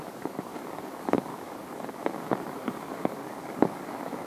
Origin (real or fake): fake